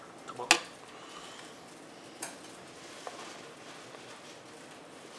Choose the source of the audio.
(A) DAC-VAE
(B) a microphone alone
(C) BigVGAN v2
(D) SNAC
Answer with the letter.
B